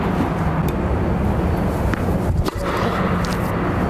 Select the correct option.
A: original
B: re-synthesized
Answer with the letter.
A